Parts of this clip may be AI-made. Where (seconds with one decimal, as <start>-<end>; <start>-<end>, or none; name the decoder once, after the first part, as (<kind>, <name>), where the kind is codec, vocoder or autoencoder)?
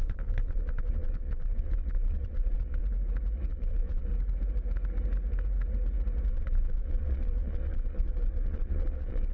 0.0-2.8 (vocoder, Vocos); 3.5-4.1; 6.3-9.3